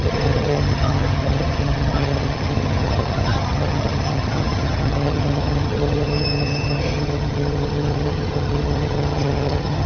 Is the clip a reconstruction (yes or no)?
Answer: yes